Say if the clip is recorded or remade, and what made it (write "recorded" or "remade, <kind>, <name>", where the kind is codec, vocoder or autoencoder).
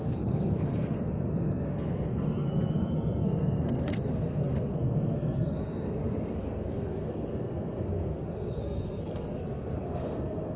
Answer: remade, codec, SNAC